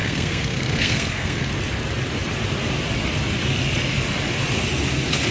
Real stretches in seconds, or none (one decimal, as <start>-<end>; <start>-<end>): 1.5-5.3